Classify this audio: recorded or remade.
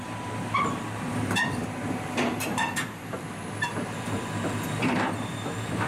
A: remade